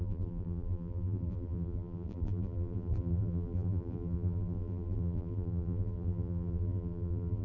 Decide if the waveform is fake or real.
fake